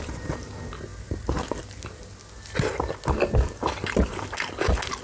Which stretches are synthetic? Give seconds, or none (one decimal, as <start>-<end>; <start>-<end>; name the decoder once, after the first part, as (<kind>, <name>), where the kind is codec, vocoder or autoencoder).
none